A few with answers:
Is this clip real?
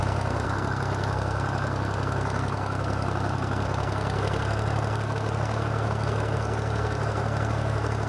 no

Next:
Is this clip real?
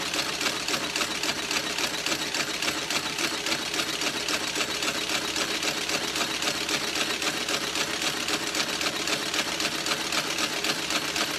yes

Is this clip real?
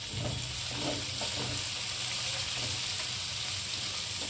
yes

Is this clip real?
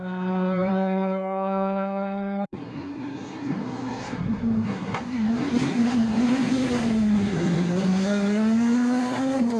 no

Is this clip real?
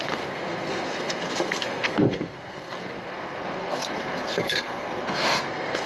no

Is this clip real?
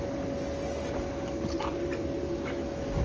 yes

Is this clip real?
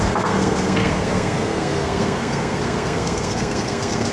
no